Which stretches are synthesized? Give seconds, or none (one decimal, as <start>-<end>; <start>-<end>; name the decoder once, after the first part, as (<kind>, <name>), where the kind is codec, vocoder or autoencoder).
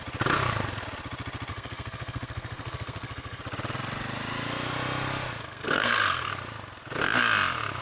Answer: 1.5-3.4 (codec, SNAC); 5.4-6.3